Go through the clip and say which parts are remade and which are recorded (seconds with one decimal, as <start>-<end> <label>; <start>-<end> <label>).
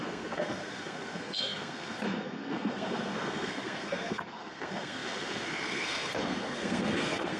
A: 0.0-7.4 remade